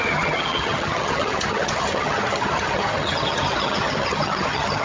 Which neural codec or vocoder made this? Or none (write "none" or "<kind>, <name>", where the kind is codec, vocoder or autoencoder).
vocoder, HiFi-GAN